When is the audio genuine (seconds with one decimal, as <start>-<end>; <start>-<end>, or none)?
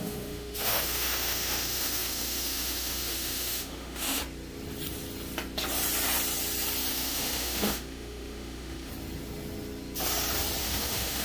4.2-6.9; 8.9-10.6